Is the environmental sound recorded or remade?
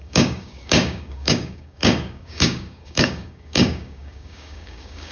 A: remade